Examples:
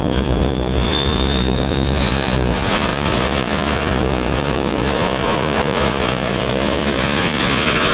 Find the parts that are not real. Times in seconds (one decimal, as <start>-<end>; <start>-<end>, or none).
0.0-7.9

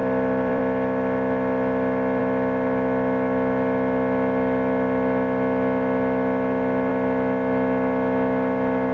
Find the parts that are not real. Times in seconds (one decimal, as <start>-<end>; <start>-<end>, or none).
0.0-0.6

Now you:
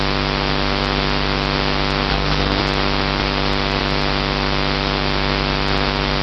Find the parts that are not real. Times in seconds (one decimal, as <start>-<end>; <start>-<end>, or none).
2.1-2.6